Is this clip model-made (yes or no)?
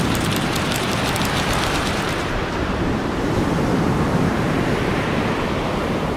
yes